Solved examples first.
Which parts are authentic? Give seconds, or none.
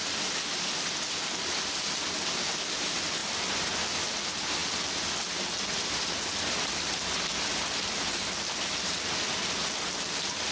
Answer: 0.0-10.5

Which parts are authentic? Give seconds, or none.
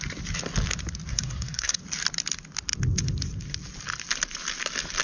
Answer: 0.0-1.1; 1.8-5.0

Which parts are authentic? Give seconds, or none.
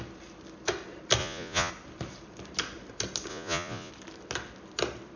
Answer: 0.0-1.2; 1.7-3.3; 3.9-5.2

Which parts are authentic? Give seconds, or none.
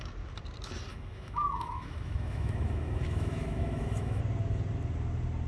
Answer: 0.0-0.9; 4.2-5.5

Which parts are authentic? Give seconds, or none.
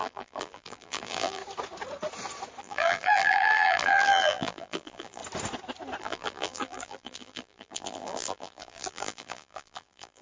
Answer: 1.4-2.6; 5.2-6.0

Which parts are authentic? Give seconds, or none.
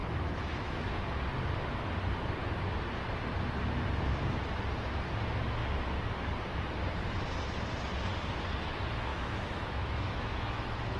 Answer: 0.9-9.1